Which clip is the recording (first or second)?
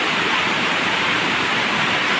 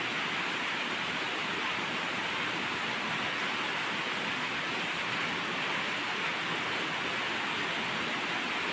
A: second